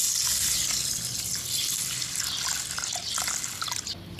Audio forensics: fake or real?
real